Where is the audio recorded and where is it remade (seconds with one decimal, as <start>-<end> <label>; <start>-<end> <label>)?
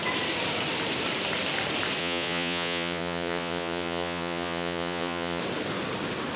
0.0-2.0 recorded; 2.0-5.4 remade; 5.4-6.4 recorded